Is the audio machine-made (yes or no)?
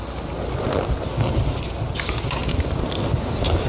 no